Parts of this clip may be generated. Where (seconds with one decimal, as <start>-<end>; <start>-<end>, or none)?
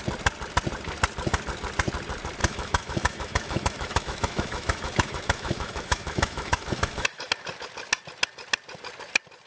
2.4-7.3